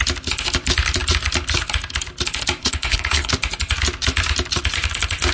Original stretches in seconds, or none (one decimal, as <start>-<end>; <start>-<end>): 0.0-2.6; 3.3-5.3